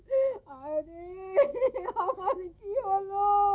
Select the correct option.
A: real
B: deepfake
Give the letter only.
B